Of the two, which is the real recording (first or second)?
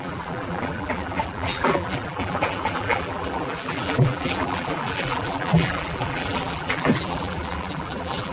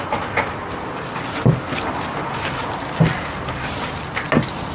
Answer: second